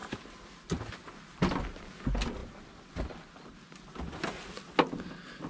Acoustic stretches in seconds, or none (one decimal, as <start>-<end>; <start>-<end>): 0.0-5.5